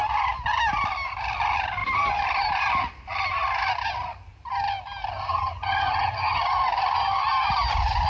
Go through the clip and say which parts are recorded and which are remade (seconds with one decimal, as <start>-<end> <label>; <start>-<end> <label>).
0.0-5.3 recorded; 5.3-6.4 remade; 6.4-8.1 recorded